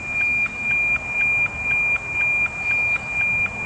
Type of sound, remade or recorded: recorded